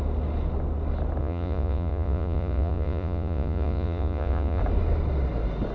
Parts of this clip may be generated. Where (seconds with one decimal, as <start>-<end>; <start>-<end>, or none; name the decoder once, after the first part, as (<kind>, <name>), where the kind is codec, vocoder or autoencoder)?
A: 1.2-4.6 (vocoder, Vocos)